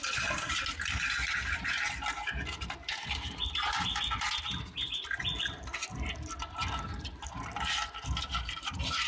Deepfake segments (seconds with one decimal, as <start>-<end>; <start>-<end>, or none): none